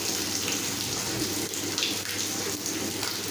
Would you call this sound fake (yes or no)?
no